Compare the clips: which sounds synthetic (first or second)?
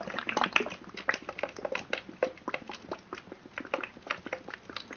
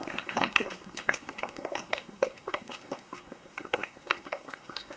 second